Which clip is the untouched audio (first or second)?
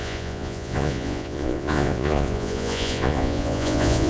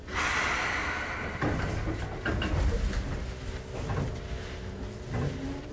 second